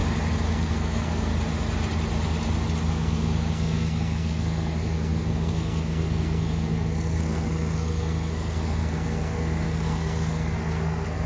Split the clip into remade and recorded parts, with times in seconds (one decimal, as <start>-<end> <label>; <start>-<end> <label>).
0.0-0.5 recorded; 0.5-1.3 remade; 1.3-2.9 recorded; 2.9-11.3 remade